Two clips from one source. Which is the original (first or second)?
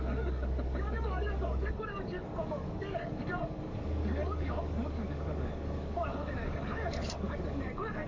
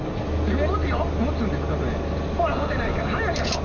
second